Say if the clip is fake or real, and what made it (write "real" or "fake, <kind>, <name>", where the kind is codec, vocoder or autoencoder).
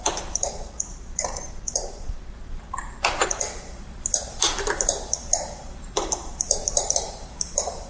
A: fake, vocoder, BigVGAN v2